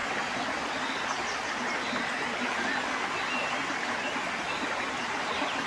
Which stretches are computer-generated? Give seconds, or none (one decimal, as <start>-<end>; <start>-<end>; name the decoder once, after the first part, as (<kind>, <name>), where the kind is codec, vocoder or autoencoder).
none